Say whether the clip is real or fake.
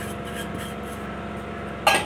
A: real